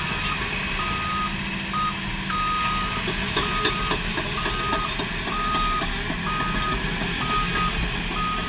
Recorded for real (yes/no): yes